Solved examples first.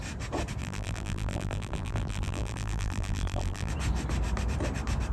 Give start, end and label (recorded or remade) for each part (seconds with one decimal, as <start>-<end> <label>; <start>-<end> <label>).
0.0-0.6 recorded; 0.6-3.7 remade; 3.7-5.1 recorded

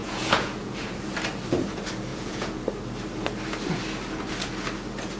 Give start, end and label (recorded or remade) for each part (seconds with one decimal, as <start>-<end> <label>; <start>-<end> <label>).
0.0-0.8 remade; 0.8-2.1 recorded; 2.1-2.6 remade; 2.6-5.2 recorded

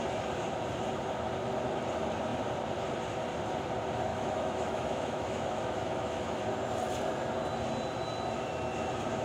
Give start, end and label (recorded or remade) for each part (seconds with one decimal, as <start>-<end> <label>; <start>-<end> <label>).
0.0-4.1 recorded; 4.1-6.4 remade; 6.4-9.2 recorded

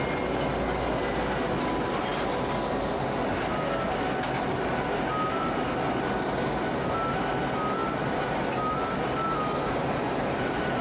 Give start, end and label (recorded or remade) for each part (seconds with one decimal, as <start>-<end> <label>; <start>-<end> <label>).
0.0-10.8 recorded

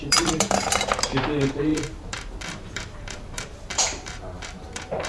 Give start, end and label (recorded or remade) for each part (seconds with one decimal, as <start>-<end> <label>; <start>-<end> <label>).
0.0-5.1 remade

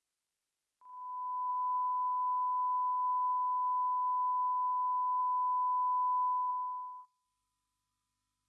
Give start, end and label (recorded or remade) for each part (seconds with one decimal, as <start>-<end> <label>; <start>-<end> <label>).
0.0-1.5 recorded; 1.5-5.2 remade; 5.2-6.5 recorded; 6.5-8.5 remade

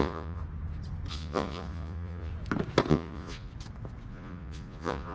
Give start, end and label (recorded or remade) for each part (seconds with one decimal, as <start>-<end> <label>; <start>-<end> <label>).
0.0-0.4 remade; 0.4-1.1 recorded; 1.1-2.3 remade; 2.3-2.9 recorded; 2.9-3.5 remade; 3.5-4.1 recorded; 4.1-5.1 remade

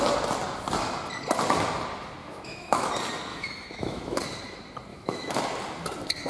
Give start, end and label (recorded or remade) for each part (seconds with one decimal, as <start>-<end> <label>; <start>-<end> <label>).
0.0-2.2 recorded; 2.2-2.9 remade; 2.9-3.3 recorded; 3.3-4.2 remade; 4.2-4.9 recorded; 4.9-5.4 remade; 5.4-6.3 recorded